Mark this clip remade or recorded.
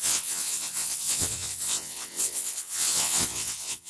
remade